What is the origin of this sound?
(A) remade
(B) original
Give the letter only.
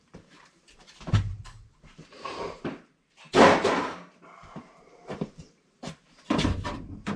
A